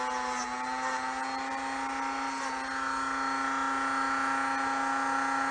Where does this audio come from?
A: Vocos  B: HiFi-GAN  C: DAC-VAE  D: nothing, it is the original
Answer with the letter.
D